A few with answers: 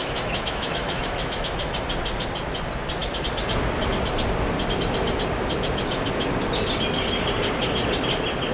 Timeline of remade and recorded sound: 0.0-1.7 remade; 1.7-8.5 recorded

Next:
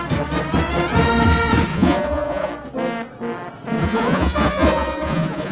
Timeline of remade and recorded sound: 0.0-1.7 recorded; 1.7-2.5 remade; 2.5-3.8 recorded; 3.8-5.5 remade

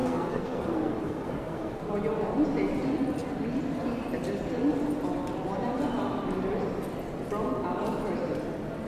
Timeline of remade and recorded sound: 0.0-1.8 remade; 1.8-8.9 recorded

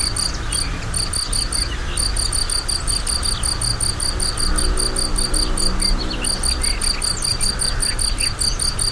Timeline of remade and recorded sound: 0.0-7.3 recorded; 7.3-7.9 remade; 7.9-8.9 recorded

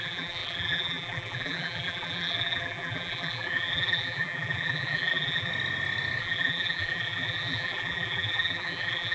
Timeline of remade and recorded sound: 0.0-5.5 remade; 5.5-6.2 recorded; 6.2-9.1 remade

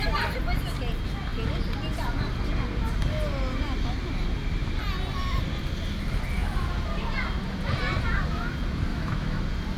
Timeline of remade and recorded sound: 0.0-8.9 recorded; 8.9-9.4 remade; 9.4-9.8 recorded